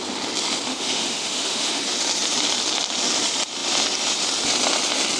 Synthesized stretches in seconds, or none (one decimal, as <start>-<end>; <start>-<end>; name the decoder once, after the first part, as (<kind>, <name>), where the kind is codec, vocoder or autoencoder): 0.7-1.8 (autoencoder, DAC-VAE)